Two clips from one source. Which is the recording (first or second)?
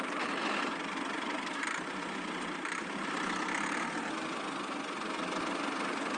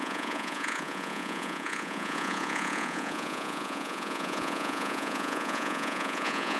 first